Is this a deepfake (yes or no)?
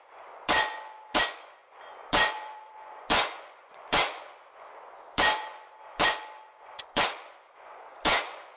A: yes